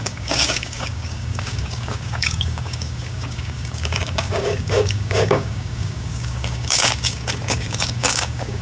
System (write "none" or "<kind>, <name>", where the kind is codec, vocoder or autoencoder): codec, DAC